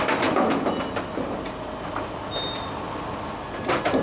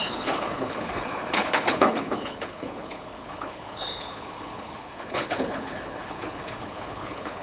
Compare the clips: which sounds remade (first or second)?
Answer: second